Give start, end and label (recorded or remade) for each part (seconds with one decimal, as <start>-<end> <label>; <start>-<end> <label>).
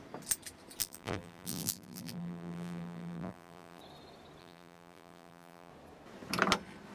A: 0.0-0.8 recorded; 0.8-3.8 remade; 3.8-4.4 recorded; 4.4-5.7 remade; 5.7-6.9 recorded